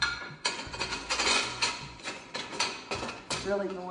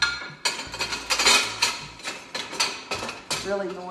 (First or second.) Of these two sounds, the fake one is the first